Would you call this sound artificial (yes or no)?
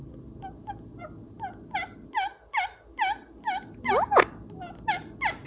no